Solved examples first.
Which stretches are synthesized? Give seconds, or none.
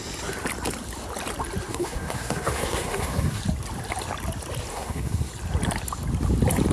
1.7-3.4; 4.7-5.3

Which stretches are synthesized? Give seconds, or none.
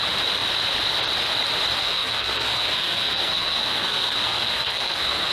1.8-5.3